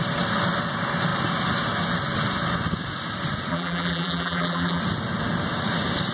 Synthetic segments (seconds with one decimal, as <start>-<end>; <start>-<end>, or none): 3.5-4.8